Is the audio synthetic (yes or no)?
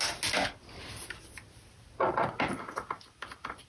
no